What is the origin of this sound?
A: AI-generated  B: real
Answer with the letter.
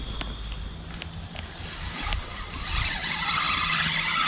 B